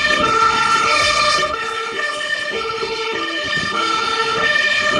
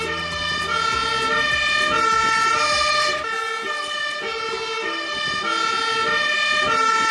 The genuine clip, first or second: second